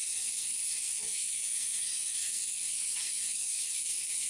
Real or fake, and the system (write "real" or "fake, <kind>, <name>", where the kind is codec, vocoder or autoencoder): fake, codec, SNAC